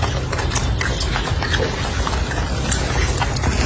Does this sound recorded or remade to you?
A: recorded